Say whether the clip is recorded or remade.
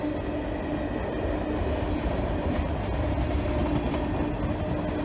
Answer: recorded